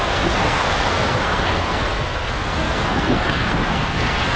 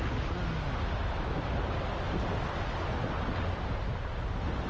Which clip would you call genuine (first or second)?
second